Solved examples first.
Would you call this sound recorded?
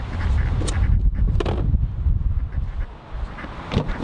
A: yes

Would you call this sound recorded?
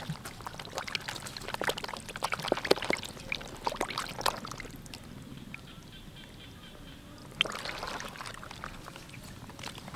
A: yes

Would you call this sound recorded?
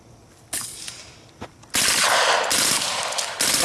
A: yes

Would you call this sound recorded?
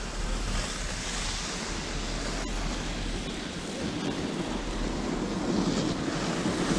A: yes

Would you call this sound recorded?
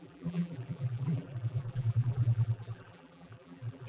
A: no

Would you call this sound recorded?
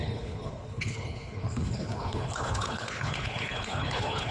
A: no